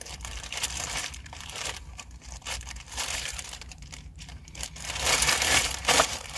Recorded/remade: remade